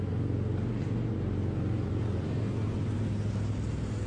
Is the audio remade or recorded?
recorded